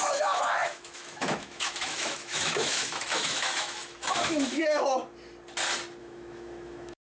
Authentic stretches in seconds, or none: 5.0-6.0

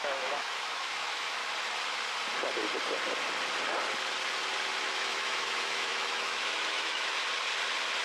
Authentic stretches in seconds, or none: 1.4-4.8; 7.2-8.0

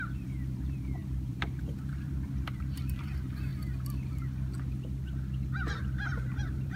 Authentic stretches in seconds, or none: 3.5-5.7

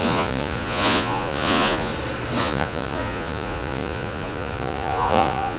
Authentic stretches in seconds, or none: 1.9-2.4